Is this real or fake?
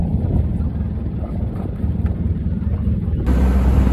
real